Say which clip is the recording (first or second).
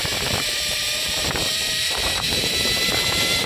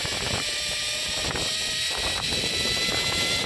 second